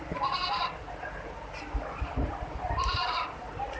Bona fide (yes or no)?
yes